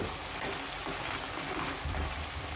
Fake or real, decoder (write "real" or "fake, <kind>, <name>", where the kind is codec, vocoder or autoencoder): real